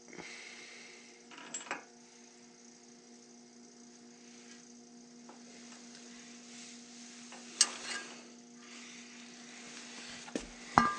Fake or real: real